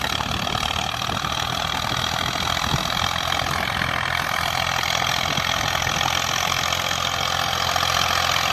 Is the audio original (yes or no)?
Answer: yes